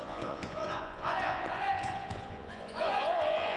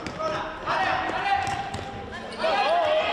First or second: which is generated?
first